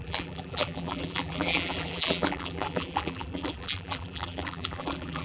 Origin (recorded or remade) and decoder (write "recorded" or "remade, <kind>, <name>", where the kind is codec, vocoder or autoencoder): remade, vocoder, BigVGAN v2